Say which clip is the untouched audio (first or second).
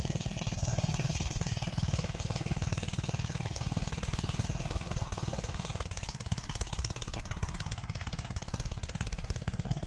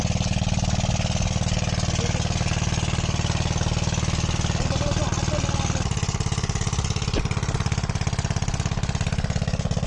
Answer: second